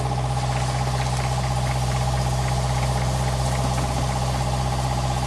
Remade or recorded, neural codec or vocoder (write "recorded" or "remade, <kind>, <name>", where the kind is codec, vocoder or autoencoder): recorded